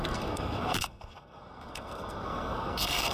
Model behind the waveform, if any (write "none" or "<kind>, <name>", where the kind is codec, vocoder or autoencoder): codec, SNAC